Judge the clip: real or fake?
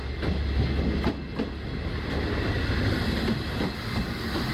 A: real